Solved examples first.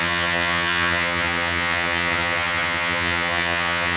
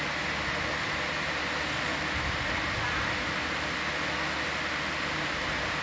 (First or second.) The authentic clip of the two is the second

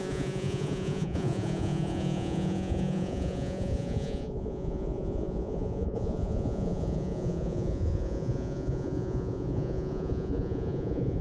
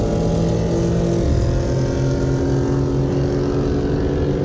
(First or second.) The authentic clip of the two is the second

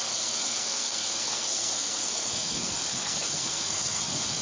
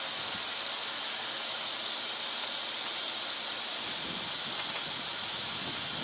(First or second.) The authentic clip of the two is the second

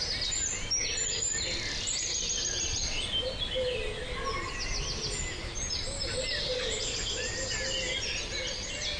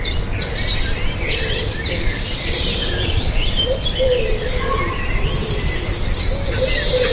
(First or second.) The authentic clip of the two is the first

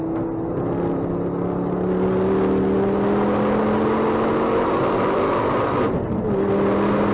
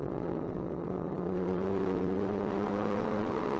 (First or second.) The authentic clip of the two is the first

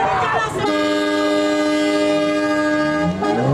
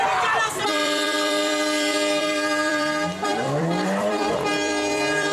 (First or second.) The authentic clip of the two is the first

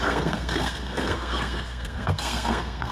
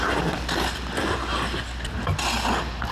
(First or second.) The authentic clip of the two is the second